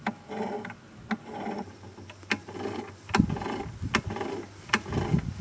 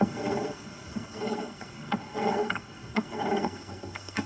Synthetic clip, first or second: second